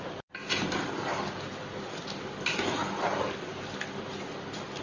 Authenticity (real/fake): real